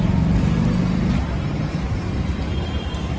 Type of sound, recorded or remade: recorded